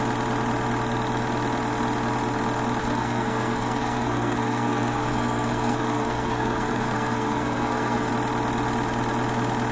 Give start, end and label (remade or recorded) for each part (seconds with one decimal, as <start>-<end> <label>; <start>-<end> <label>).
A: 0.0-2.8 recorded; 2.8-8.1 remade; 8.1-9.7 recorded